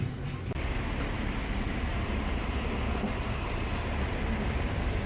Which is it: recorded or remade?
recorded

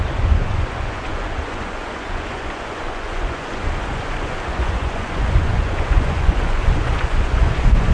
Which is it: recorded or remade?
remade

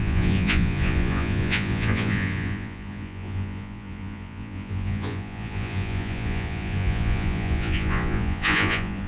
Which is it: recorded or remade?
remade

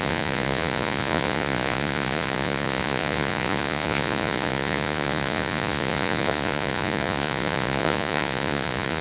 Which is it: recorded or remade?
remade